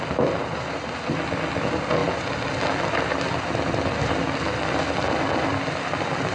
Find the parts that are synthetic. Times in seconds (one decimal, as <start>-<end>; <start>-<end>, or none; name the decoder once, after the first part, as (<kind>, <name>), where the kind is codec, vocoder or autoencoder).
0.4-1.0 (vocoder, BigVGAN v2)